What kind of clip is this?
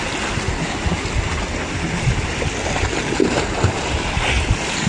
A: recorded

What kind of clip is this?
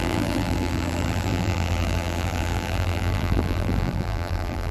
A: remade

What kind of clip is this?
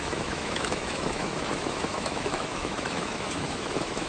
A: remade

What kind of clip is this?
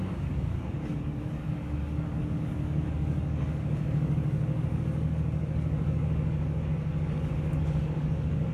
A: remade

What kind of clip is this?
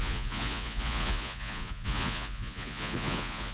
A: remade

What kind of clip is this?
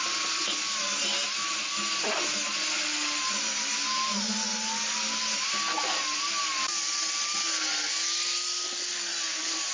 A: recorded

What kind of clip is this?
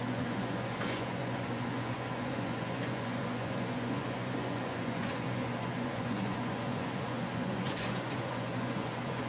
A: remade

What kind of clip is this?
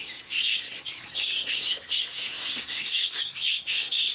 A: remade